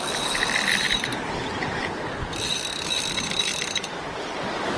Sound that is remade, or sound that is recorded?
recorded